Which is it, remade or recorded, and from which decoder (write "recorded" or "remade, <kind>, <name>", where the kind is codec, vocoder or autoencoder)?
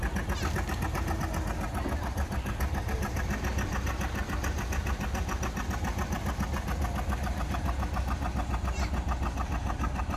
recorded